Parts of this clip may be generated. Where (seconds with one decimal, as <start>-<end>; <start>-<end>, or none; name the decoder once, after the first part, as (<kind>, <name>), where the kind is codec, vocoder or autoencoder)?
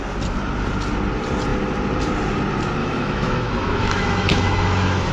2.8-5.1 (autoencoder, DAC-VAE)